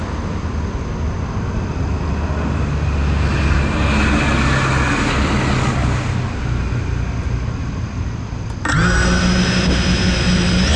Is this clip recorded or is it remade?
recorded